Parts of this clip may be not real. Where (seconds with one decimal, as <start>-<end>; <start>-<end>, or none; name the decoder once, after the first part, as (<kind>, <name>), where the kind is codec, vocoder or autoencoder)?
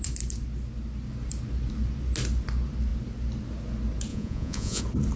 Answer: 4.1-4.8 (vocoder, Vocos)